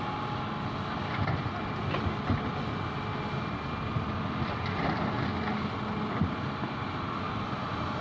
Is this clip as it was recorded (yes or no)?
yes